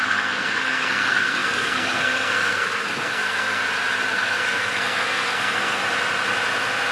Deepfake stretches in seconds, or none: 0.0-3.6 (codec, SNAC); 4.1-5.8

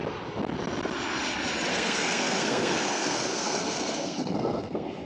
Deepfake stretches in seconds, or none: 1.7-5.1 (codec, SNAC)